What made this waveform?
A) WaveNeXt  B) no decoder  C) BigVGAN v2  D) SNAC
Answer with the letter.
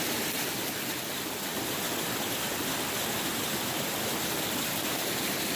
B